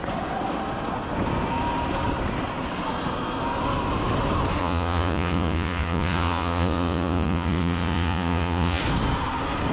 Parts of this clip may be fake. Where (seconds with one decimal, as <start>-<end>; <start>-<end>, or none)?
4.6-8.8